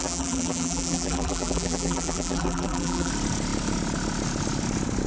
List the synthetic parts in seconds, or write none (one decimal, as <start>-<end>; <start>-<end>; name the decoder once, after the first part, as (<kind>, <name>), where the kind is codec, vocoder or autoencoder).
0.0-3.1 (vocoder, BigVGAN v2)